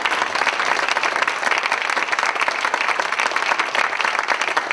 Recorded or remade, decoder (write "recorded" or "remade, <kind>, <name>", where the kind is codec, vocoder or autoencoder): recorded